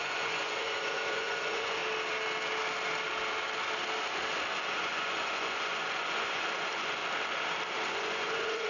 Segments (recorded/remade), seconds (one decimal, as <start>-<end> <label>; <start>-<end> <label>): 0.0-1.8 remade; 1.8-4.6 recorded; 4.6-7.0 remade; 7.0-7.9 recorded; 7.9-8.7 remade